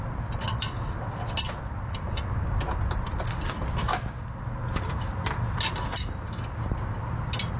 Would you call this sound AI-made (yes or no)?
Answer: no